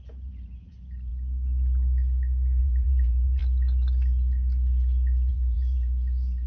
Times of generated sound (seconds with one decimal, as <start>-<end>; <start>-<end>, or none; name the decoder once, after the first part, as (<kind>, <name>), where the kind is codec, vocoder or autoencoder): 0.0-1.1 (vocoder, BigVGAN v2); 2.6-3.4; 5.3-6.5